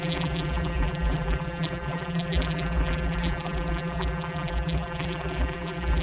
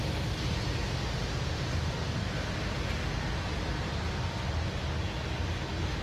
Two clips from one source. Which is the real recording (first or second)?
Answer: second